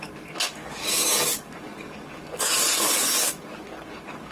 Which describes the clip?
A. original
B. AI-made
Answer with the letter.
B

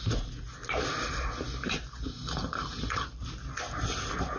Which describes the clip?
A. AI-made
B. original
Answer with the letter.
B